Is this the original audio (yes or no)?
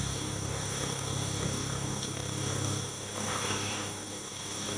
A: no